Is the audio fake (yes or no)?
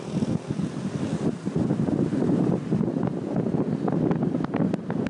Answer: no